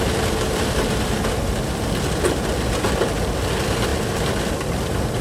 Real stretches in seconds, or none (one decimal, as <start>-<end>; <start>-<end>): 0.0-5.2